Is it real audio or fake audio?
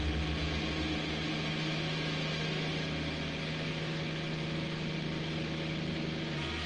real